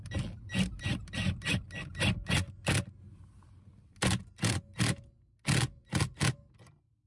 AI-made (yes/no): no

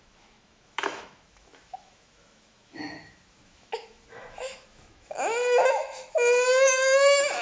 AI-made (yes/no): yes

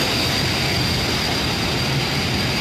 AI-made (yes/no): no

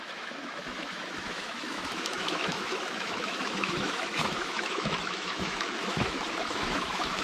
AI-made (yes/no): yes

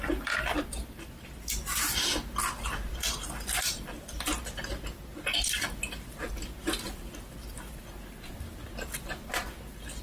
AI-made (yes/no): no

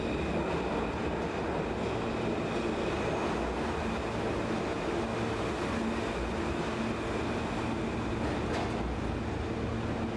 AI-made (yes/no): no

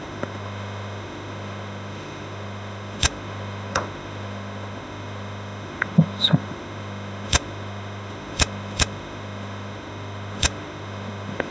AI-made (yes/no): yes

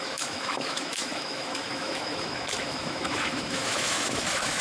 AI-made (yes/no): yes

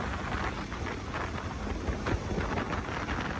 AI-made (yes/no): no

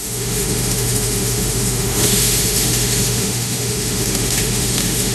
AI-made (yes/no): yes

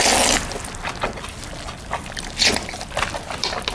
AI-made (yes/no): no